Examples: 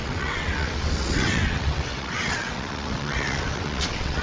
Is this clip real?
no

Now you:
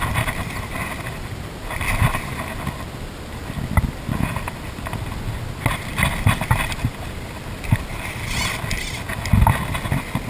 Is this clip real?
yes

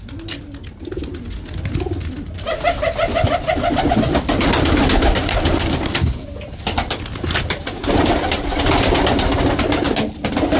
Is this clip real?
yes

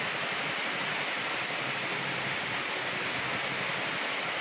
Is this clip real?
yes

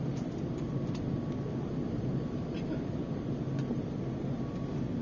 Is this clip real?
yes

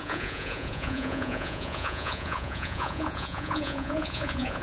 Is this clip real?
no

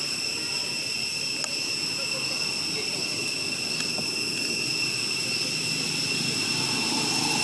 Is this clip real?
yes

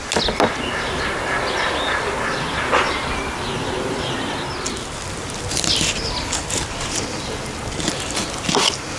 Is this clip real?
yes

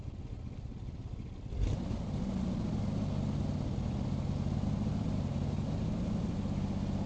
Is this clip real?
yes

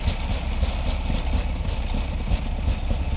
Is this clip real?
yes